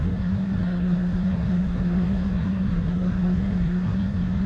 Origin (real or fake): fake